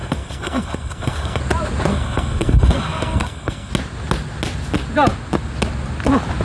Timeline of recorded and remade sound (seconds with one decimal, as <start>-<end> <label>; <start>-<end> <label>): 0.0-1.4 remade; 1.4-1.9 recorded; 1.9-3.7 remade; 3.7-6.4 recorded

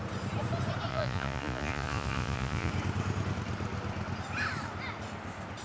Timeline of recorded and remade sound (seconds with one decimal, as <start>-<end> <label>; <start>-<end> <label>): 0.0-0.9 recorded; 0.9-2.7 remade; 2.7-5.6 recorded

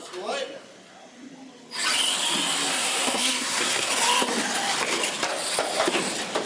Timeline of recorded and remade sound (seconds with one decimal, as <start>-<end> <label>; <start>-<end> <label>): 0.0-2.7 recorded; 2.7-3.9 remade; 3.9-6.5 recorded

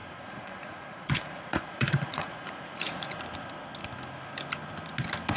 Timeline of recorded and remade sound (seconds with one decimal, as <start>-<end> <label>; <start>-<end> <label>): 0.0-3.2 remade; 3.2-5.4 recorded